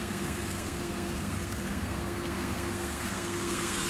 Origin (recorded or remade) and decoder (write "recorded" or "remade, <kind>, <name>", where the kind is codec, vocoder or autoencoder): remade, codec, SNAC